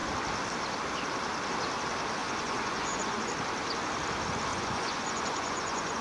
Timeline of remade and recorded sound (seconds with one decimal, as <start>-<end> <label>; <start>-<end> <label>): 0.0-2.2 recorded; 2.2-3.3 remade; 3.3-4.5 recorded; 4.5-6.0 remade